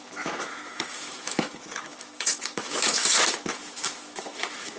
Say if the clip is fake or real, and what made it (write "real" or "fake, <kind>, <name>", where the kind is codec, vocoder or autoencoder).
fake, autoencoder, DAC-VAE